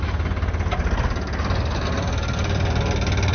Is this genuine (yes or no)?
yes